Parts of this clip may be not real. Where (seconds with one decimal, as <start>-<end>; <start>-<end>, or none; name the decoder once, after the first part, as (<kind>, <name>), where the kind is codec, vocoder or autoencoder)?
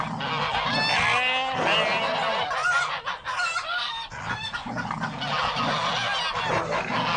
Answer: none